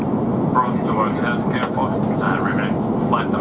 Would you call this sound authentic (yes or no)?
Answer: yes